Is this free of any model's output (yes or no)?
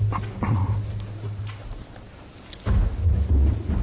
yes